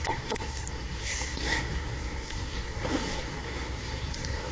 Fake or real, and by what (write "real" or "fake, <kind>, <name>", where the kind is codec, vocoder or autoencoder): fake, codec, SNAC